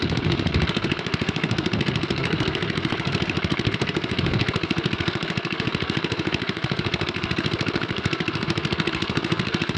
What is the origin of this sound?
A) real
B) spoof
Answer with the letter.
B